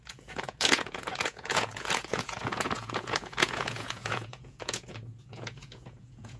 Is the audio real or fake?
fake